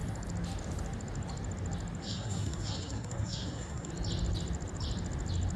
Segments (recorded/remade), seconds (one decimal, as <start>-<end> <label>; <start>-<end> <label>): 0.0-2.0 recorded; 2.0-3.9 remade; 3.9-5.6 recorded